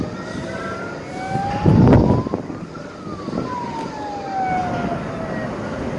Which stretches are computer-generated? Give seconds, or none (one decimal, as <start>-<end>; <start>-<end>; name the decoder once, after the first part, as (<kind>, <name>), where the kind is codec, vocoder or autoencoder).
none